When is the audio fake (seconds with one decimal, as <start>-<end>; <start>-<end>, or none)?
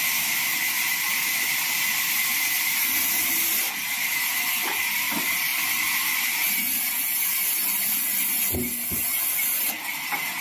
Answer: none